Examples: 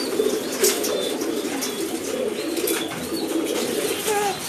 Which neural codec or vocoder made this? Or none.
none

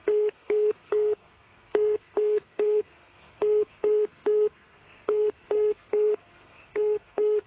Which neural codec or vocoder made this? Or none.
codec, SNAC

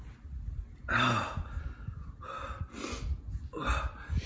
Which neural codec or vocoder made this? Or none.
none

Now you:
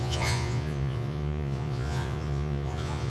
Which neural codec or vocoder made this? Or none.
vocoder, Vocos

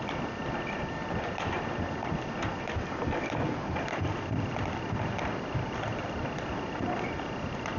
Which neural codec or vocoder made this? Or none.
none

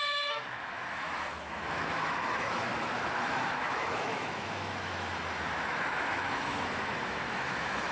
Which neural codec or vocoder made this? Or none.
autoencoder, DAC-VAE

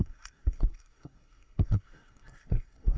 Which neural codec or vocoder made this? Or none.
codec, SNAC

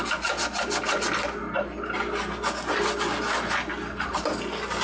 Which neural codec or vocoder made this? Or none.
none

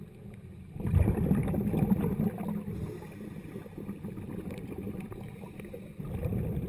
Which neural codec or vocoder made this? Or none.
none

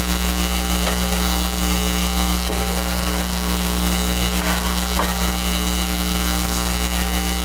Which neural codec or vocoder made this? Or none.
codec, SNAC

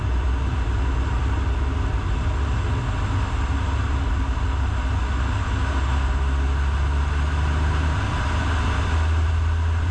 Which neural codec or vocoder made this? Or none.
none